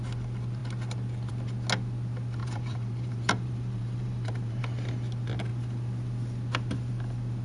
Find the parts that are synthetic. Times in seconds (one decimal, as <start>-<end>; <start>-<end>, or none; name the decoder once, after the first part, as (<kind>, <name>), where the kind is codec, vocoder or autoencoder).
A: 2.4-4.6 (vocoder, BigVGAN v2)